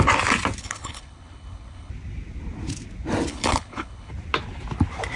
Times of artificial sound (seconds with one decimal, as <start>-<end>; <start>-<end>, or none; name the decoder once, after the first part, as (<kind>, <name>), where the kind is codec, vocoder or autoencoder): 0.6-1.9 (codec, HILCodec); 3.3-4.1